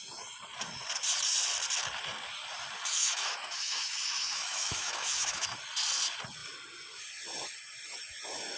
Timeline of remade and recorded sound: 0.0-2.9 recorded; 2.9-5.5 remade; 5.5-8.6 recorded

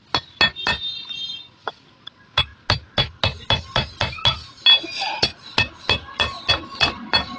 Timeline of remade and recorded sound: 0.0-7.4 recorded

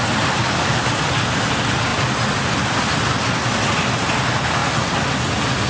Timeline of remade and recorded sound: 0.0-5.7 recorded

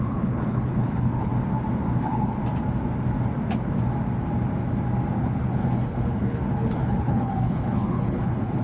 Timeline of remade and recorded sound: 0.0-1.3 remade; 1.3-2.0 recorded; 2.0-2.4 remade; 2.4-5.2 recorded; 5.2-8.6 remade